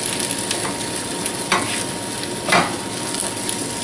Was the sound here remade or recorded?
recorded